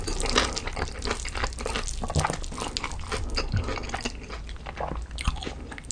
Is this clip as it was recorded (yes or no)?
yes